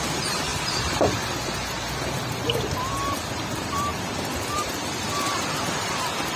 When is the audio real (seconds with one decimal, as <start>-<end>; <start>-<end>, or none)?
none